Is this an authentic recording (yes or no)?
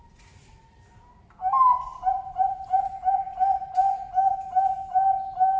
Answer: yes